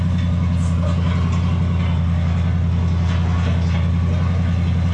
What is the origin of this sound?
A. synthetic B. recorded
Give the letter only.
B